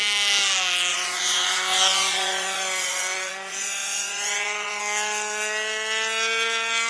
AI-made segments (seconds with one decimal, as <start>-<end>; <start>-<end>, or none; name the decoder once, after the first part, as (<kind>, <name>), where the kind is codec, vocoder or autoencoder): 0.9-4.8 (vocoder, Vocos)

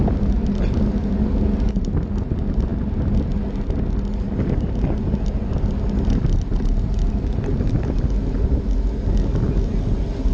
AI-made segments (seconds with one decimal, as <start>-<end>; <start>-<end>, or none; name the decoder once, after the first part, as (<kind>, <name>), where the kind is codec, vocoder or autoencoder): none

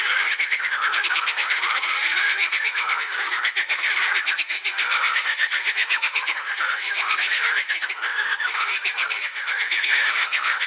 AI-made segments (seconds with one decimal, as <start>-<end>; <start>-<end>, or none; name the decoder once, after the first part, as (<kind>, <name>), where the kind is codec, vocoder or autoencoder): 0.0-10.7 (autoencoder, DAC-VAE)

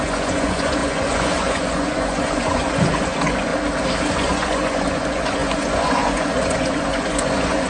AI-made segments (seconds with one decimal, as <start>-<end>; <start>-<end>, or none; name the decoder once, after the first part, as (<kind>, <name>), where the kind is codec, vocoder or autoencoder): 0.0-3.5 (vocoder, Vocos); 4.1-7.7

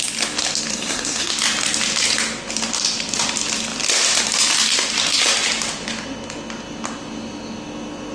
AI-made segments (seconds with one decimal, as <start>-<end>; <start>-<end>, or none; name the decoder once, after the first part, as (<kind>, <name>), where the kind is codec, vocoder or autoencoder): 0.7-1.3 (codec, SNAC)